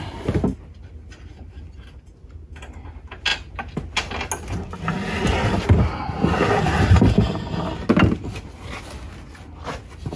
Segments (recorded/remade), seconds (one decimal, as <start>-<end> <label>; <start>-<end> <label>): 0.0-10.2 recorded